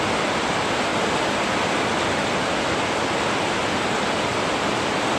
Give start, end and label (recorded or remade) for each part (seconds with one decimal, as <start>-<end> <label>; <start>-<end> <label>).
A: 0.0-5.2 recorded